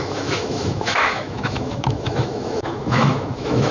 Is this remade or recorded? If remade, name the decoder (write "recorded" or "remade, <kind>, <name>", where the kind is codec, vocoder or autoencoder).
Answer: remade, autoencoder, DAC-VAE